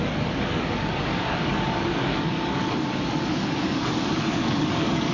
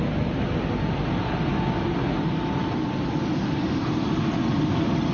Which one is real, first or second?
second